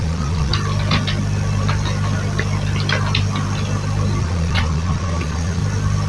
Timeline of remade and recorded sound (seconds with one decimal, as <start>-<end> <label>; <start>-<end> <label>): 0.0-0.5 remade; 0.5-4.2 recorded; 4.2-5.6 remade; 5.6-6.1 recorded